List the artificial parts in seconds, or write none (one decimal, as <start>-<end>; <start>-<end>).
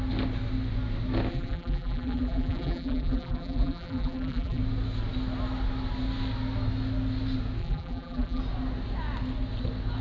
1.3-4.6; 7.6-8.4